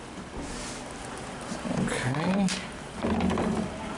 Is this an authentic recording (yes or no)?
yes